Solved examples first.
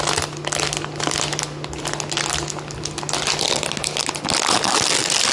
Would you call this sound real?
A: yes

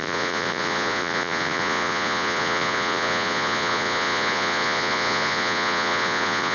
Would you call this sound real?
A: no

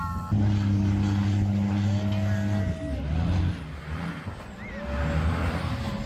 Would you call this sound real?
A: yes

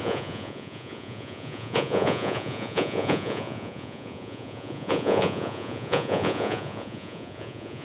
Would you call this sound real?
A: no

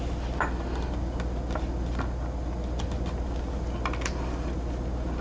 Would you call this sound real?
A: yes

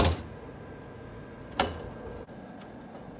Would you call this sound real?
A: no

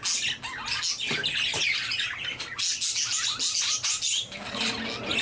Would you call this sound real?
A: yes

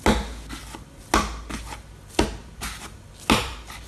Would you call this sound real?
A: yes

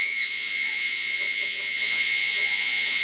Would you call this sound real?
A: no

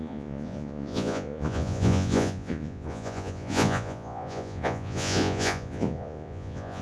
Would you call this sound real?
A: no